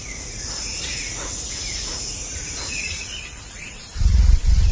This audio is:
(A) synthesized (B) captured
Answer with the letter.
A